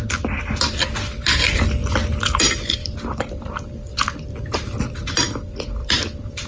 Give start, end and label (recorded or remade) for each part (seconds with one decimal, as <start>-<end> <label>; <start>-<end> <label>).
0.0-2.8 recorded; 2.8-4.8 remade; 4.8-5.8 recorded; 5.8-6.5 remade